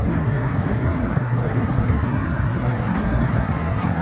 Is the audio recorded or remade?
remade